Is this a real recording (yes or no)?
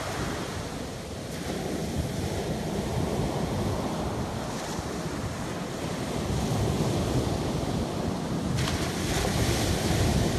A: yes